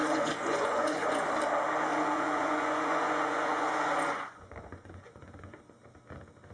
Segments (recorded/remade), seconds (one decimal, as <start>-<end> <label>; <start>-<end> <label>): 0.0-1.3 remade; 1.3-1.9 recorded; 1.9-5.6 remade; 5.6-6.5 recorded

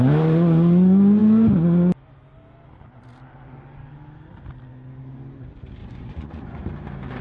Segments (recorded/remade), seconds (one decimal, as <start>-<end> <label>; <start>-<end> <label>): 0.0-5.8 recorded; 5.8-6.6 remade; 6.6-7.2 recorded

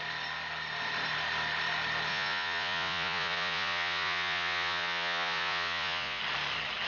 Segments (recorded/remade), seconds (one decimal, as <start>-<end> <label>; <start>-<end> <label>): 0.0-2.1 recorded; 2.1-6.2 remade; 6.2-6.9 recorded